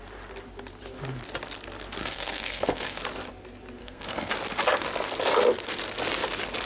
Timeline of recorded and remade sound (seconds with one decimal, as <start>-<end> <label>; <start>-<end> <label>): 0.0-2.0 recorded; 2.0-3.0 remade; 3.0-3.8 recorded; 3.8-4.3 remade; 4.3-6.7 recorded